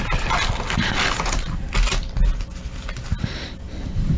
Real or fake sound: real